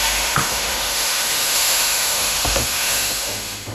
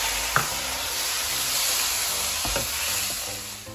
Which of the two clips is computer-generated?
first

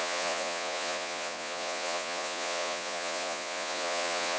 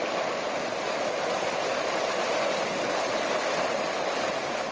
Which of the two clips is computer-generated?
first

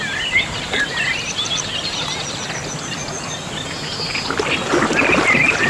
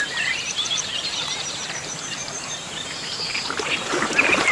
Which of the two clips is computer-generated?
second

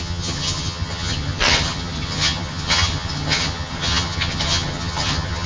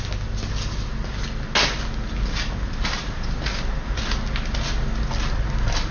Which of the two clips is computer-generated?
first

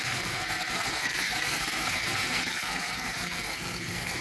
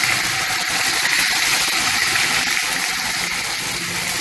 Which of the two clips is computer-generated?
first